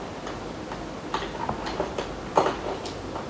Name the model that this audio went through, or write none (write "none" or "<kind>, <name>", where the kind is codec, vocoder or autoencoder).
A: none